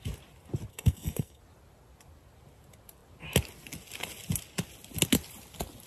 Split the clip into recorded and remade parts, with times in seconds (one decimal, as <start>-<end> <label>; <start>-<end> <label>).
0.0-0.7 recorded; 0.7-1.4 remade; 1.4-5.9 recorded